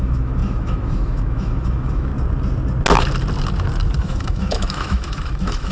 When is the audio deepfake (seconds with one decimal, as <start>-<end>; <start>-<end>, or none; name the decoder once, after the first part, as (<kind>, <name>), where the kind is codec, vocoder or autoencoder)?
0.0-2.1 (autoencoder, DAC-VAE); 4.0-5.7